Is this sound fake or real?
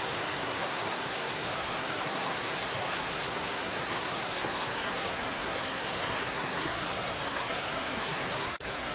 fake